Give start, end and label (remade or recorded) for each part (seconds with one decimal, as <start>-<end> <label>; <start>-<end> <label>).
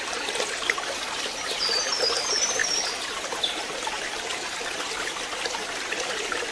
0.0-6.5 recorded